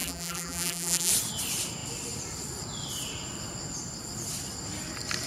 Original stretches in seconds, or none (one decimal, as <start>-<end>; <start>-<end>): 1.1-5.3